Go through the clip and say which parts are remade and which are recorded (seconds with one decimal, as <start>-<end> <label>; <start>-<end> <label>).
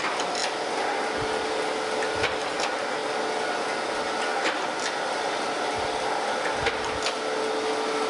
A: 0.0-8.1 recorded